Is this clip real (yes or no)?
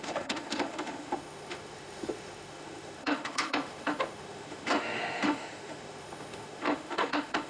no